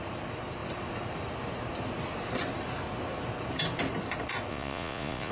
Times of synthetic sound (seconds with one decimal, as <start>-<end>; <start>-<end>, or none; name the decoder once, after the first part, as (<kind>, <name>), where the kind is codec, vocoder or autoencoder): 4.5-5.3 (vocoder, Vocos)